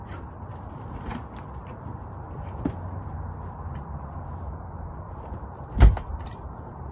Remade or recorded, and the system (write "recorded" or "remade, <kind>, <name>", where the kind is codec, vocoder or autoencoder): remade, vocoder, BigVGAN v2